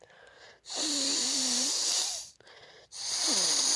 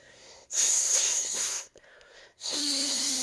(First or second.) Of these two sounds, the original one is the first